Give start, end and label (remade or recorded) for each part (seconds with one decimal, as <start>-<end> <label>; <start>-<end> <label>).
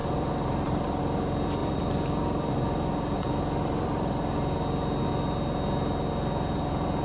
0.0-1.0 remade; 1.0-1.6 recorded; 1.6-4.1 remade; 4.1-7.0 recorded